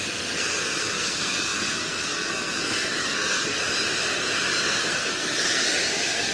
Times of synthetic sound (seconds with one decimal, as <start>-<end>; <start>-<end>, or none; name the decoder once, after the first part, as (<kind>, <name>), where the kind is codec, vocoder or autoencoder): 0.0-3.6 (codec, SNAC); 4.7-6.3